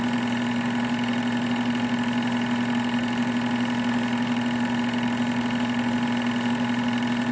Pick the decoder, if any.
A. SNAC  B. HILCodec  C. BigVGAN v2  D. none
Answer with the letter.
D